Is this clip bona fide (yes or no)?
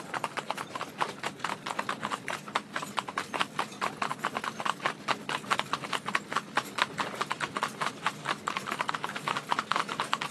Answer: yes